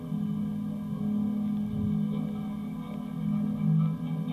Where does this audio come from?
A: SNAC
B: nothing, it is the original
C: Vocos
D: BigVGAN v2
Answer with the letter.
B